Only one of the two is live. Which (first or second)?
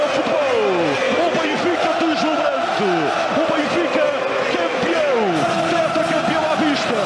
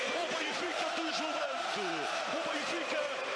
first